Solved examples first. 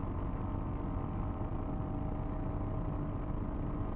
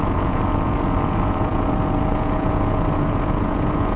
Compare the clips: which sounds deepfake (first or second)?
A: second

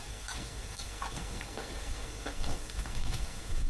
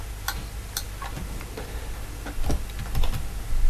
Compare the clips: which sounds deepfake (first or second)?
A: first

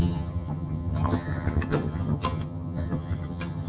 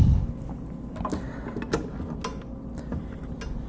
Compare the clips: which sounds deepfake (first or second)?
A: first